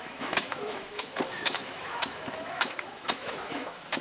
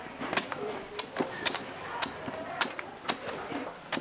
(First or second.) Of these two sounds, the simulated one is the first